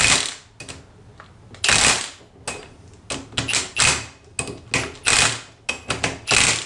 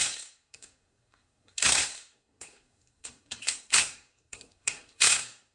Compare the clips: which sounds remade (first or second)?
second